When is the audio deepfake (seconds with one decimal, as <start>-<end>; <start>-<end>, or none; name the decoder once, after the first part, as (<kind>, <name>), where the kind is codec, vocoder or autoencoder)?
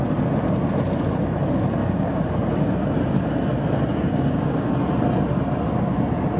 1.8-2.3 (codec, DAC); 3.9-4.7